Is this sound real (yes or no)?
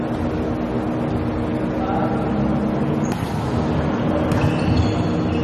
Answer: yes